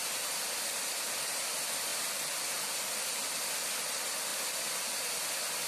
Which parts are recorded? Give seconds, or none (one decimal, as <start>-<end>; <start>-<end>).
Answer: 0.6-5.7

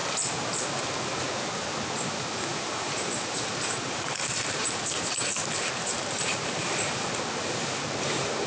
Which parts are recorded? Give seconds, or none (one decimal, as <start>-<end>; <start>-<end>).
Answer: 0.0-2.5; 7.1-8.5

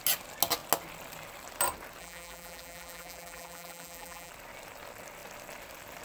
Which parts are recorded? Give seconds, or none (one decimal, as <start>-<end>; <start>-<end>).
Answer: 0.0-2.0; 4.3-6.0

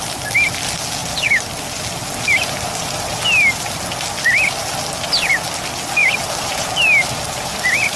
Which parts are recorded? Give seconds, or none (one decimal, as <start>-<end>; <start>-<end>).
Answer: 0.0-6.0; 7.5-8.0

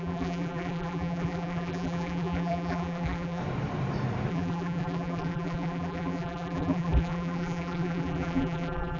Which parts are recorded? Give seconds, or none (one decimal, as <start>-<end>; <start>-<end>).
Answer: 3.4-4.3

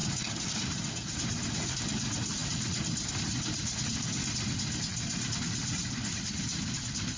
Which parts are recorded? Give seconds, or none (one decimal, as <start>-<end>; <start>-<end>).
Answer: 0.0-4.9; 6.3-7.2

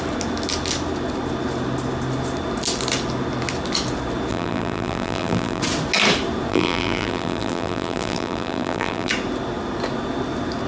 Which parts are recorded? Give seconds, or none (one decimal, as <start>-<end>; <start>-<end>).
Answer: 0.0-4.3; 5.6-6.5; 9.1-10.7